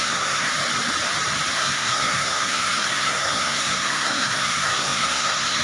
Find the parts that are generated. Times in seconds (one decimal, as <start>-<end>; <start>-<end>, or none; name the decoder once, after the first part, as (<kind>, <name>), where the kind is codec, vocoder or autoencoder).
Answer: 0.0-0.5 (codec, SNAC); 1.5-5.6